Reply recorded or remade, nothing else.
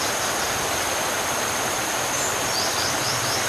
recorded